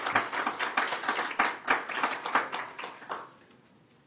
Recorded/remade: recorded